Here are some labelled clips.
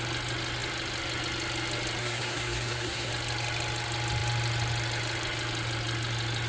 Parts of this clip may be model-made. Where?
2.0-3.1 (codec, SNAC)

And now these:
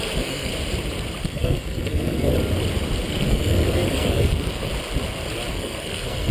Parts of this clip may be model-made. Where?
0.0-0.5 (codec, SNAC); 1.2-2.3; 3.1-4.7; 5.5-6.3

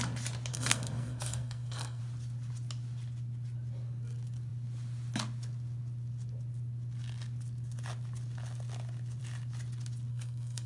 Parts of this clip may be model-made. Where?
0.5-2.0 (codec, SNAC); 10.1-10.7

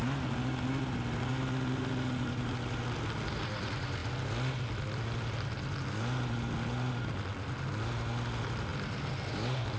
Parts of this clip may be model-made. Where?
none

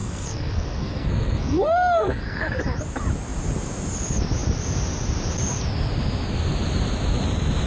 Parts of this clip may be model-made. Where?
0.0-2.6 (codec, SNAC)

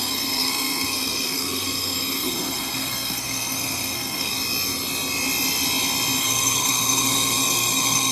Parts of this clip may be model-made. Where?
0.0-4.3 (codec, SNAC); 6.2-8.1

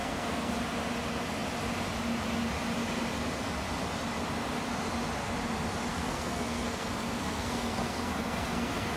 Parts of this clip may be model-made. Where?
0.0-0.5 (codec, SNAC); 5.9-9.0

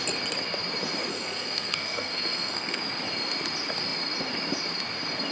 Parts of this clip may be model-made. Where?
1.1-2.8 (codec, SNAC)